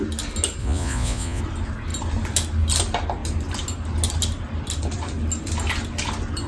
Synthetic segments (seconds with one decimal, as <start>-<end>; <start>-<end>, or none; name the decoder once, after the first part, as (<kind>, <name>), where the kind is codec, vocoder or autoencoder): 0.6-1.4 (vocoder, Vocos)